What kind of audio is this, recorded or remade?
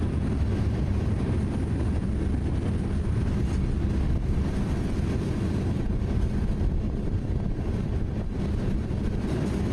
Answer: recorded